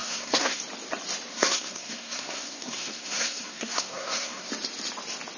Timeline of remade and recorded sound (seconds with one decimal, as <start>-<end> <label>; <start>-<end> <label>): 0.0-0.6 remade; 0.6-1.3 recorded; 1.3-4.5 remade; 4.5-5.4 recorded